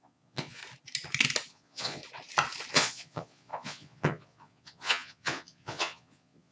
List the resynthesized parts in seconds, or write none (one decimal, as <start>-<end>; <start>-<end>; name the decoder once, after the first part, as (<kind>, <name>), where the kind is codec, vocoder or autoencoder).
0.0-0.6 (vocoder, Vocos); 1.5-2.0; 2.7-6.5